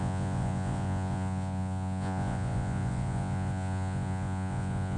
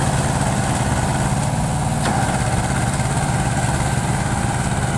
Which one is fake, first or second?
first